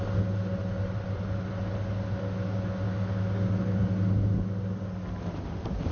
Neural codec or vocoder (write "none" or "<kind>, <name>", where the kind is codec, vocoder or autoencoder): none